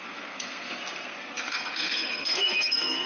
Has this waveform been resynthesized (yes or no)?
yes